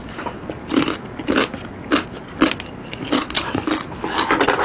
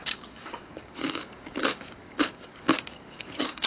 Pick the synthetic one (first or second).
second